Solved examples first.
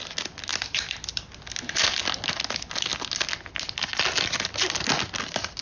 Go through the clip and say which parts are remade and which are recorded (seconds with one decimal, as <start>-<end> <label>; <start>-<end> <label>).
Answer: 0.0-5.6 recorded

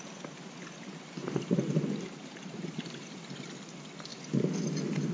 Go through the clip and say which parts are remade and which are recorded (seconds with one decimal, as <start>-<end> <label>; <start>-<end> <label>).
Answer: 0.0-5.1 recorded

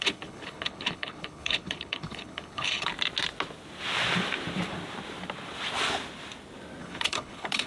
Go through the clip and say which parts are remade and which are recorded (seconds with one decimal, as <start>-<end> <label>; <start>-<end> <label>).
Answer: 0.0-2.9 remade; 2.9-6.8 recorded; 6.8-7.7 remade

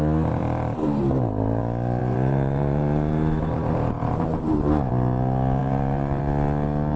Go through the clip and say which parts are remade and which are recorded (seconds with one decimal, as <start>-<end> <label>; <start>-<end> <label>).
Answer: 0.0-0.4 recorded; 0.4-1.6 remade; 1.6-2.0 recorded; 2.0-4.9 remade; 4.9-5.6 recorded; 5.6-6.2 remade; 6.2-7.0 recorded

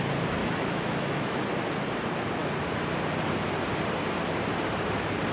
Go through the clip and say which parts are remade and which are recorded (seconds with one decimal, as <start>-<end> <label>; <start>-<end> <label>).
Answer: 0.0-0.4 recorded; 0.4-1.4 remade; 1.4-5.3 recorded

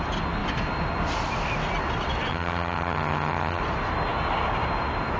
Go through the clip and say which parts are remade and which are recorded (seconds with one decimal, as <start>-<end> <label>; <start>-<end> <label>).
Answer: 0.0-2.3 recorded; 2.3-3.6 remade; 3.6-5.2 recorded

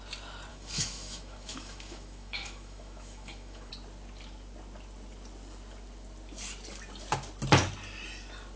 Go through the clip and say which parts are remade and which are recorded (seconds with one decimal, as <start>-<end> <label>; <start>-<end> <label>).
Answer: 0.0-0.5 recorded; 0.5-3.7 remade; 3.7-8.6 recorded